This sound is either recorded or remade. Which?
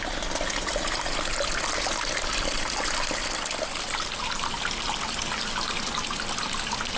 recorded